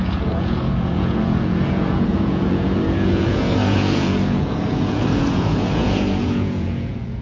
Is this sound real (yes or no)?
no